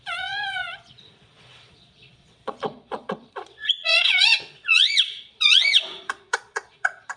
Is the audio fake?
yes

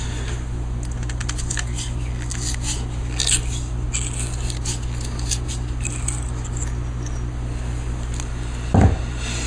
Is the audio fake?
no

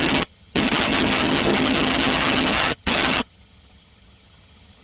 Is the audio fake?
yes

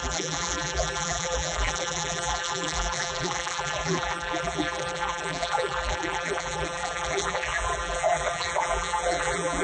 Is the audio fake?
yes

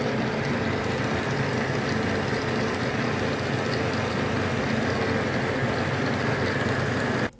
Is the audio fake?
no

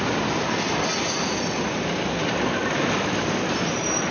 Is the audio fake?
no